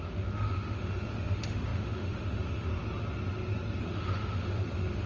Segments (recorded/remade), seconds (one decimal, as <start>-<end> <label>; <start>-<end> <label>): 0.0-2.7 remade; 2.7-3.8 recorded; 3.8-5.1 remade